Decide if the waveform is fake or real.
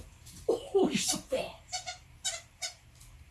fake